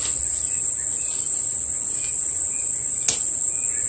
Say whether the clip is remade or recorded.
recorded